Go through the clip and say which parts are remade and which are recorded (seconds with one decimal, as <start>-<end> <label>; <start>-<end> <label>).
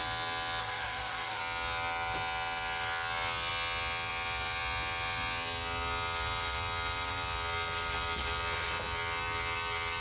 0.0-0.6 recorded; 0.6-1.4 remade; 1.4-10.0 recorded